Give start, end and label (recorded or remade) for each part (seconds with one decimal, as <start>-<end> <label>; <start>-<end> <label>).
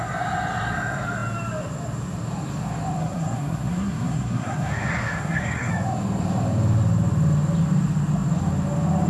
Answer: 0.0-3.0 recorded; 3.0-5.7 remade; 5.7-9.1 recorded